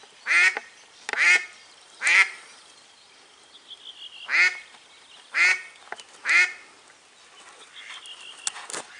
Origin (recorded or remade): recorded